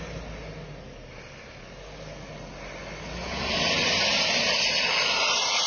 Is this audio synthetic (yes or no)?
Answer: no